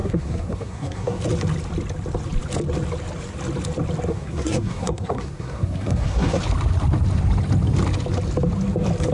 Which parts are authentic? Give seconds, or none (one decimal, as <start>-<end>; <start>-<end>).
1.2-4.1; 6.4-9.1